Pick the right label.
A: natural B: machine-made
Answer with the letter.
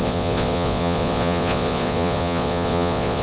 B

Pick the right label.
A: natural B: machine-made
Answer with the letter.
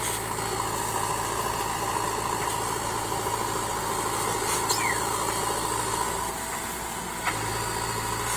A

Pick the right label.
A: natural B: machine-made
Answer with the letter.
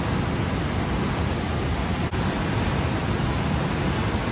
A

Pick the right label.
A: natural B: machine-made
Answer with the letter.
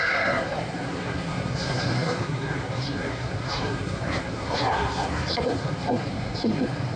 B